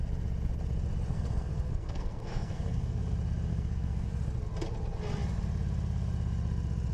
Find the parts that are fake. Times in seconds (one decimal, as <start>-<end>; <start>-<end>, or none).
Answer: 1.1-3.0; 3.5-4.1